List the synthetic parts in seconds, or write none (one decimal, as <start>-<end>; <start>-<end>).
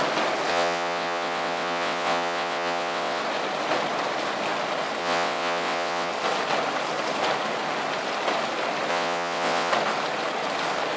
0.5-3.2; 5.0-6.1; 8.9-9.7